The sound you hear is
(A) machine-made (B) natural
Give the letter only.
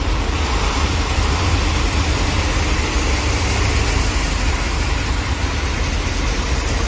A